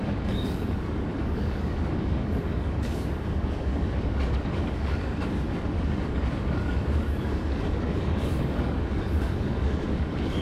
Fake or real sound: fake